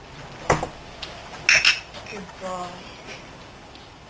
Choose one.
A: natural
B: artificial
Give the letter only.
A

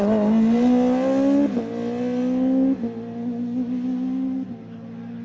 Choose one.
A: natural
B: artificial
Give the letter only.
A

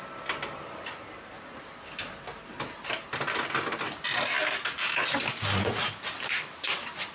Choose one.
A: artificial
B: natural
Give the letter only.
B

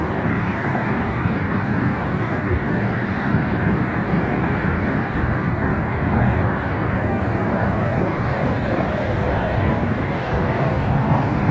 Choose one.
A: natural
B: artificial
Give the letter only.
B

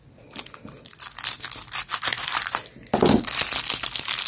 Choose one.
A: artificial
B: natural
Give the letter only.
B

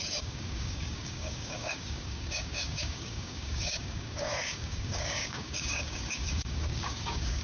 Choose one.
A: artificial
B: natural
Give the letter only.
A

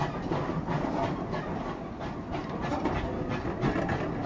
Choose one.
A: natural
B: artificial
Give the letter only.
A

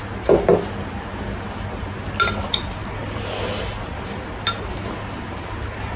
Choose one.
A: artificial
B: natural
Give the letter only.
B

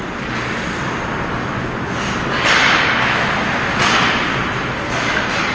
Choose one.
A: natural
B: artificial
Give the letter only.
A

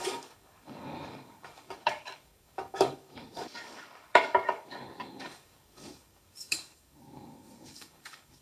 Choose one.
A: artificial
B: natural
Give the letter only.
A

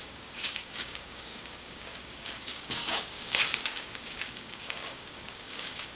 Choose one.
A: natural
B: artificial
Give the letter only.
B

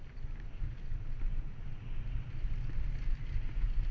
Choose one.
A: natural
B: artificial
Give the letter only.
A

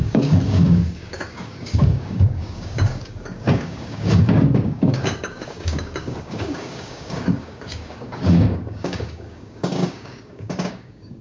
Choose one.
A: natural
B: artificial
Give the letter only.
B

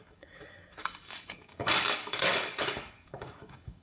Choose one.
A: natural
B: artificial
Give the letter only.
B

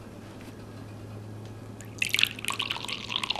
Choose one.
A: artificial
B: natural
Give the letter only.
B